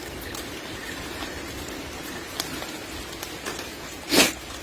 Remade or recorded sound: recorded